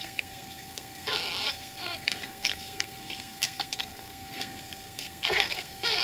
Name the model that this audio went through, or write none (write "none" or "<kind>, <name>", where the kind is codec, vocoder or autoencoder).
codec, SNAC